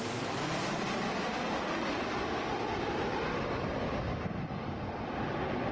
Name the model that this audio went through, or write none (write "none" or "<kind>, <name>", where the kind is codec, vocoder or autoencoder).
none